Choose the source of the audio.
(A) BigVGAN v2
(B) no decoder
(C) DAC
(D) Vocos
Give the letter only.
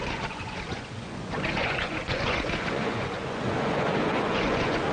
D